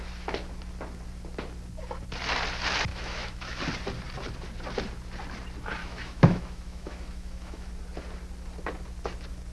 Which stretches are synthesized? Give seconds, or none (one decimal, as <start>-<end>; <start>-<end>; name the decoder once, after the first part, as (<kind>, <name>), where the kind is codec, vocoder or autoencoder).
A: 2.9-3.6 (autoencoder, DAC-VAE); 5.8-7.7